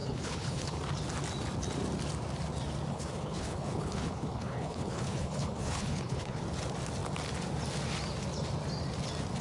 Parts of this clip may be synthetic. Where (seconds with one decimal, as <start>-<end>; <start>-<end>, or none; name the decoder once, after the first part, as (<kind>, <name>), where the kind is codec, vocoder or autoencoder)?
0.0-0.8 (codec, HILCodec); 2.9-6.4